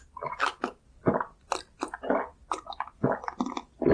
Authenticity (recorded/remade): recorded